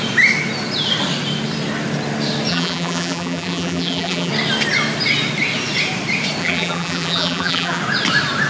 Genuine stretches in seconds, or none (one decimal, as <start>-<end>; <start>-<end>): 0.0-2.5; 4.3-6.4; 7.8-8.5